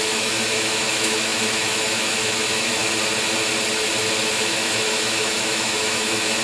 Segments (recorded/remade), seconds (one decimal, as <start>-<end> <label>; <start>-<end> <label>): 0.0-2.8 remade; 2.8-4.3 recorded; 4.3-6.4 remade